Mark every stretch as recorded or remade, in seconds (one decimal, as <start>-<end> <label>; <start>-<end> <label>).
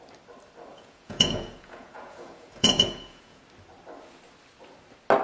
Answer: 0.0-0.7 recorded; 0.7-3.4 remade; 3.4-5.2 recorded